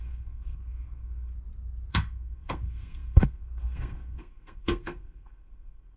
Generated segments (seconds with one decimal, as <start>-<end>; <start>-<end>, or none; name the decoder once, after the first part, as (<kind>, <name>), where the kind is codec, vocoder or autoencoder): 0.0-1.3 (codec, SNAC); 1.9-6.0

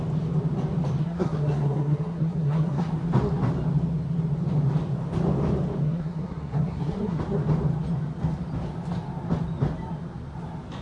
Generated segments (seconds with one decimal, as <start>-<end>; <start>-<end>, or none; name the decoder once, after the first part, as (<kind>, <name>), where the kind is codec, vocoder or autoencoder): 1.0-2.9 (codec, SNAC); 5.8-7.2

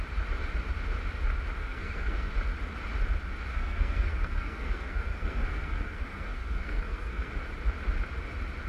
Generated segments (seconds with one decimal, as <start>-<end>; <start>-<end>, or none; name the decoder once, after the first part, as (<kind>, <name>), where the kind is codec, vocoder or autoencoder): 1.6-2.3 (codec, SNAC); 3.5-7.3

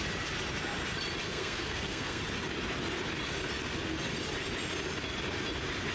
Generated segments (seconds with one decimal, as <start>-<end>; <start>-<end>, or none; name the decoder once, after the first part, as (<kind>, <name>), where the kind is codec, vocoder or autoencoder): 1.2-2.2 (codec, SNAC)

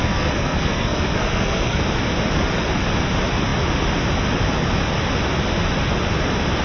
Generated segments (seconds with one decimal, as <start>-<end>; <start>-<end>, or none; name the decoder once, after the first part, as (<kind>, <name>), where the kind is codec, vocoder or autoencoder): 0.0-1.8 (codec, SNAC)